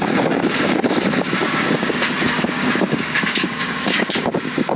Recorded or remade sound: remade